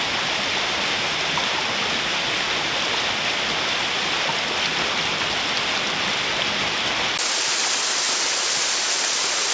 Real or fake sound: real